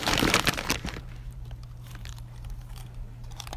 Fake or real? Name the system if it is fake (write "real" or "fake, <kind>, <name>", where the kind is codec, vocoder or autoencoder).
fake, vocoder, BigVGAN v2